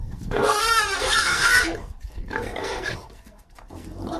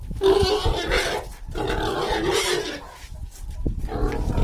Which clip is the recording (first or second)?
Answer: second